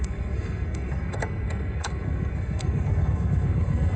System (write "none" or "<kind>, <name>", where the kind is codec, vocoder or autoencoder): codec, SNAC